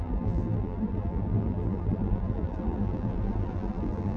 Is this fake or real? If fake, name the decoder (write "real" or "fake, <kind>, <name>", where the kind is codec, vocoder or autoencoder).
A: fake, vocoder, BigVGAN v2